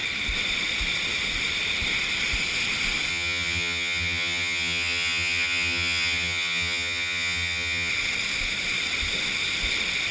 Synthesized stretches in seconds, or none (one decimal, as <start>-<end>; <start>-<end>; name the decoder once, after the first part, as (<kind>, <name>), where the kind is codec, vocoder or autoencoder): 3.1-7.9 (vocoder, HiFi-GAN)